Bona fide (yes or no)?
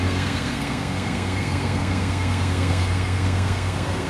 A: no